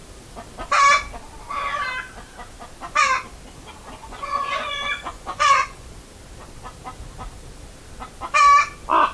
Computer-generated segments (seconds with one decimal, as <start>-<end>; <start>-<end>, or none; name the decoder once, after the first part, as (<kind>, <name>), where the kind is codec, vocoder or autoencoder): 4.0-5.9 (vocoder, Vocos)